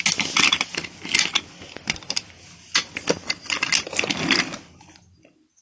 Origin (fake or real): real